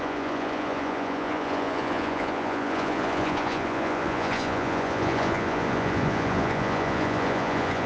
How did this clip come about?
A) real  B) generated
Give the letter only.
B